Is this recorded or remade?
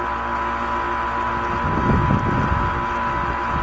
recorded